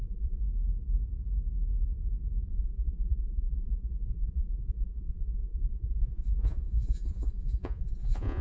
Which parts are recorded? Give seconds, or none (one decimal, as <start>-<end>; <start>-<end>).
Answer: 0.4-2.5